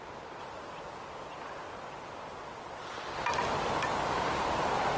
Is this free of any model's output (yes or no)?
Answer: yes